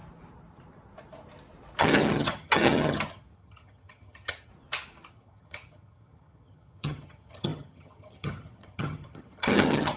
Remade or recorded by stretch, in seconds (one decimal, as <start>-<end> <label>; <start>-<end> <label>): 0.0-1.8 recorded; 1.8-4.5 remade; 4.5-5.1 recorded; 5.1-10.0 remade